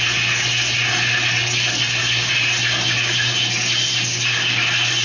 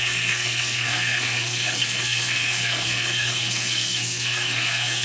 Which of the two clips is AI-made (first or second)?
second